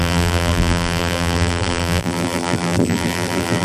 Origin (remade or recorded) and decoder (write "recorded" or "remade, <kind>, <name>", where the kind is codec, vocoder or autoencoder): remade, vocoder, BigVGAN v2